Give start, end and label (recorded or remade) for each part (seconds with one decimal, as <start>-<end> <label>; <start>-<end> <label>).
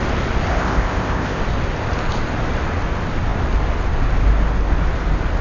0.0-0.5 recorded; 0.5-1.4 remade; 1.4-5.4 recorded